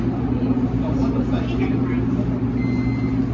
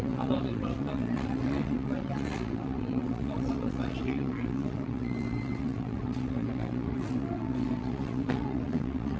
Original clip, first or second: first